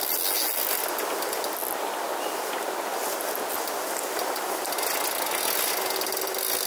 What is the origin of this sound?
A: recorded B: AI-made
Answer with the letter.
A